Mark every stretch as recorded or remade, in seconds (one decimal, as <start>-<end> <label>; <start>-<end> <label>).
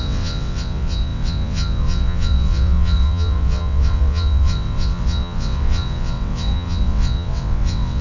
0.0-8.0 remade